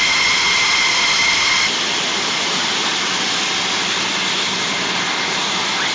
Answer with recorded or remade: recorded